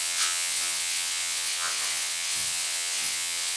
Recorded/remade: remade